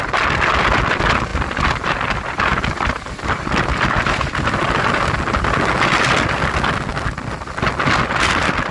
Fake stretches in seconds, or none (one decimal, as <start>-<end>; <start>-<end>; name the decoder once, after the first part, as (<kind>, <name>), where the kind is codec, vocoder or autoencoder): none